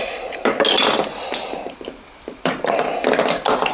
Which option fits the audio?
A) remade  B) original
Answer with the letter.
B